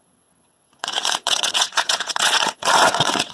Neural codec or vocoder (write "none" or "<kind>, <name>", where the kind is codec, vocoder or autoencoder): vocoder, WaveNeXt